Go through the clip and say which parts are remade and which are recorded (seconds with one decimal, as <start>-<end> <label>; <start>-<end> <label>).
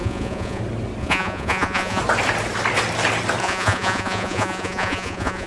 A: 0.0-0.6 remade; 0.6-1.0 recorded; 1.0-2.0 remade; 2.0-3.4 recorded; 3.4-5.5 remade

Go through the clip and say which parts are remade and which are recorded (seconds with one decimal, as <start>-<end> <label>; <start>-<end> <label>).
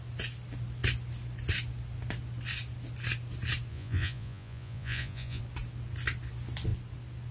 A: 0.0-3.7 recorded; 3.7-5.4 remade; 5.4-7.3 recorded